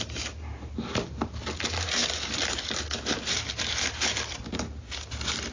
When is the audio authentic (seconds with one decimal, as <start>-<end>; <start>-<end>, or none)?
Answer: 0.0-5.5